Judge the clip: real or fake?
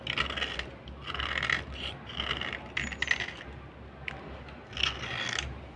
real